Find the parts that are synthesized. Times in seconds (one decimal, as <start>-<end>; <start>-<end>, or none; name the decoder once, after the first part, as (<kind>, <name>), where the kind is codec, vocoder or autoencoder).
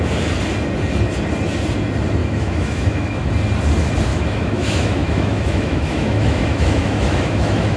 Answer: 2.2-3.3 (autoencoder, DAC-VAE); 4.1-7.8